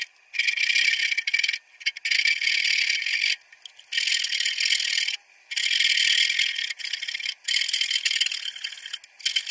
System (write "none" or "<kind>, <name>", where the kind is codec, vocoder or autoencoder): none